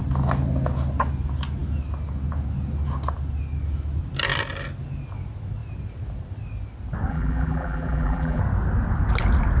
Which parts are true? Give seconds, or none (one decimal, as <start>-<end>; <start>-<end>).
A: 0.0-7.1; 8.4-9.6